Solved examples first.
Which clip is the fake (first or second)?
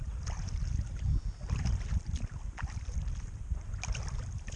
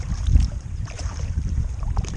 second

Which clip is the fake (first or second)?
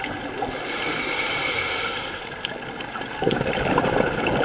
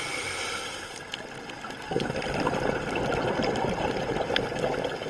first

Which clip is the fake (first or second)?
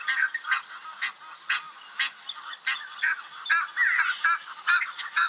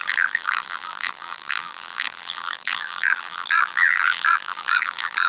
second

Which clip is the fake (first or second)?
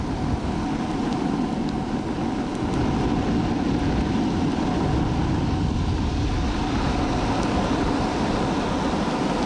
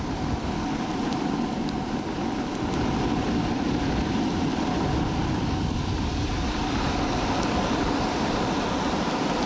second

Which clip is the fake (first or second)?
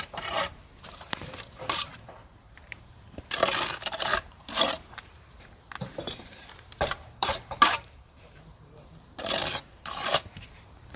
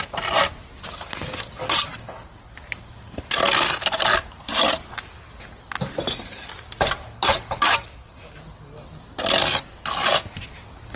first